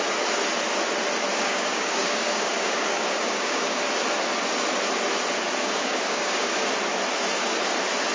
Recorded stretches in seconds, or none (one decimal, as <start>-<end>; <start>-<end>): 0.0-1.3; 3.8-5.6; 6.7-8.1